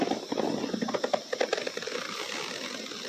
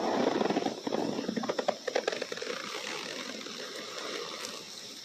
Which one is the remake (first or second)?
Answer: second